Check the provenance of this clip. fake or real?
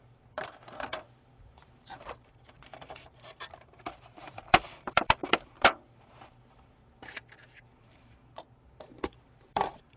fake